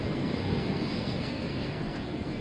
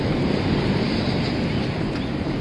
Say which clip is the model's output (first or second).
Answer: first